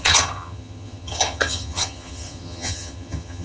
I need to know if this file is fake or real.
fake